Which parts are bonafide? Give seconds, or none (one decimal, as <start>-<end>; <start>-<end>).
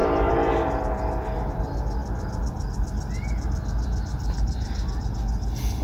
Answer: 0.0-5.8